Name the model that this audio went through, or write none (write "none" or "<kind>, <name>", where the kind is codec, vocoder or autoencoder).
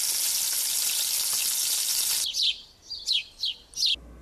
none